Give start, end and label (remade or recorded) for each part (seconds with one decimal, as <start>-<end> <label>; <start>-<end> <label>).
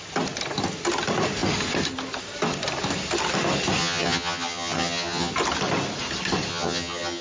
0.0-3.8 recorded; 3.8-5.3 remade; 5.3-6.5 recorded; 6.5-7.2 remade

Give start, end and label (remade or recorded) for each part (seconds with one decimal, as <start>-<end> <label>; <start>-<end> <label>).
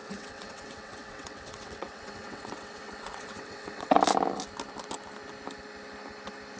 0.0-4.0 remade; 4.0-6.6 recorded